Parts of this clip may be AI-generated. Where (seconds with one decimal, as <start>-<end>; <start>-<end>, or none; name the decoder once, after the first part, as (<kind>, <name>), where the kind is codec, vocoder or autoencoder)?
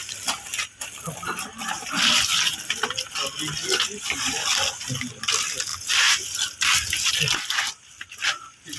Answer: none